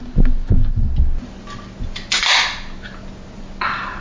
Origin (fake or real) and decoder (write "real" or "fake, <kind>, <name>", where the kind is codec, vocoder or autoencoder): real